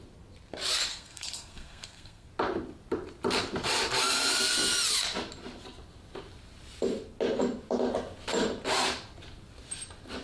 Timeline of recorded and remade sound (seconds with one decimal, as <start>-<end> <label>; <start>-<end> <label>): 0.0-0.9 recorded; 0.9-2.3 remade; 2.3-10.2 recorded

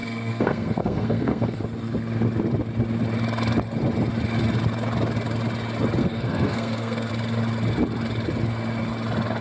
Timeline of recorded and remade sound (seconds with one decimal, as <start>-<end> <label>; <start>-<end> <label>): 0.0-1.6 remade; 1.6-6.0 recorded; 6.0-7.1 remade; 7.1-9.4 recorded

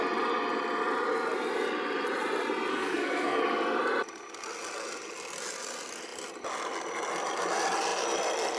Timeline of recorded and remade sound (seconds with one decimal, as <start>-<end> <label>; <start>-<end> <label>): 0.0-2.7 recorded; 2.7-3.4 remade; 3.4-8.6 recorded

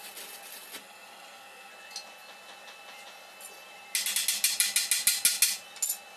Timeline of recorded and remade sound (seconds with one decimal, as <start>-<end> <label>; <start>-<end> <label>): 0.0-0.8 recorded; 0.8-1.7 remade; 1.7-6.2 recorded

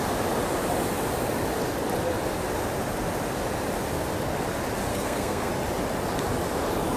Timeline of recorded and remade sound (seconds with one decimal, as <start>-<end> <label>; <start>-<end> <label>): 0.0-4.9 recorded; 4.9-5.5 remade; 5.5-7.0 recorded

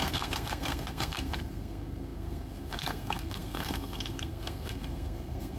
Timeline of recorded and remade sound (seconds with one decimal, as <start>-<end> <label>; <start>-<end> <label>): 0.0-5.6 remade